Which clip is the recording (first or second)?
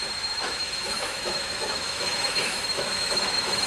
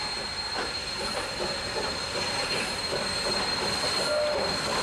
second